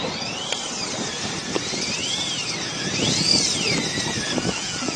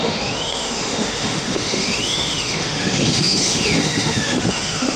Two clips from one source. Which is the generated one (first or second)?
second